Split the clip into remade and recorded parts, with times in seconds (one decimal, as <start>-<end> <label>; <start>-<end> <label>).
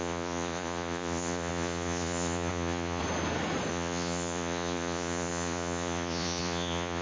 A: 0.0-3.0 remade; 3.0-3.7 recorded; 3.7-7.0 remade